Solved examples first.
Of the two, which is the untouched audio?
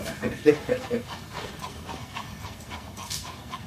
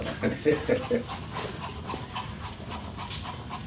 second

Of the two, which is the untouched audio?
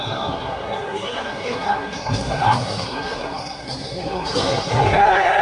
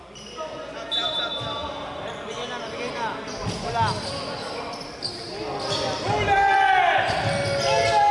second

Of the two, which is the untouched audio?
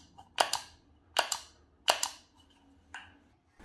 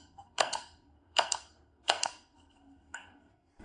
first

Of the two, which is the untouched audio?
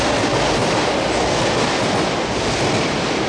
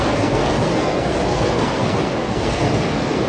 first